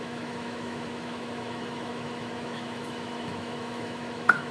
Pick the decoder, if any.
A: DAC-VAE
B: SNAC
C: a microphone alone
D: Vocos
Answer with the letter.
A